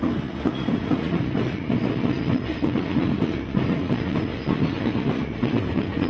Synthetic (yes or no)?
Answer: yes